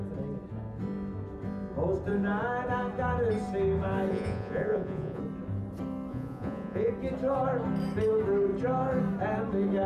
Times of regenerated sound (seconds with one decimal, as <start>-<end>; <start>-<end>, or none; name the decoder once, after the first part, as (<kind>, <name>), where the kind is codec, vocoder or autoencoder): 4.1-5.2 (vocoder, Vocos); 6.1-6.9

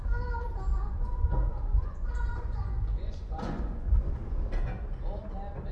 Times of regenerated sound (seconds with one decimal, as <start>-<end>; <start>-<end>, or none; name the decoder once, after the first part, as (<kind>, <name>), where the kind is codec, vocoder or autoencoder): 0.7-4.1 (vocoder, Vocos)

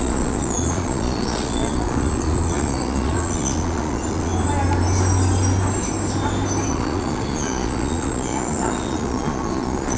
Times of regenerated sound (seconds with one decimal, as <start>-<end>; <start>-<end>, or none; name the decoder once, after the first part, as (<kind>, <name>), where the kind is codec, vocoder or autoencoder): 0.0-4.3 (vocoder, Vocos); 6.7-10.0

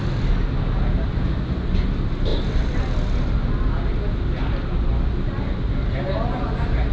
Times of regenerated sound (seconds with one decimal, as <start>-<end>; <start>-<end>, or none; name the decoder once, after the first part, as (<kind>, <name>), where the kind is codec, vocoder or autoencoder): none

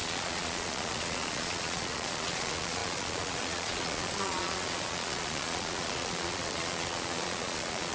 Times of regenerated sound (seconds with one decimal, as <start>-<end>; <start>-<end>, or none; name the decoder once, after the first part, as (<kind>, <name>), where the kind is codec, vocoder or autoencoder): 0.0-7.9 (vocoder, Vocos)

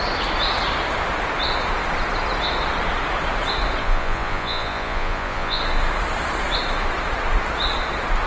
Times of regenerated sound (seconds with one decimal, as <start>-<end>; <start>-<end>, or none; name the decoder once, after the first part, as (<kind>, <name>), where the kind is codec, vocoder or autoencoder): 3.8-5.6 (vocoder, Vocos)